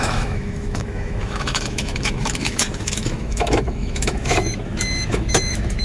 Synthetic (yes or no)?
yes